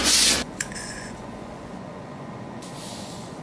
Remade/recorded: remade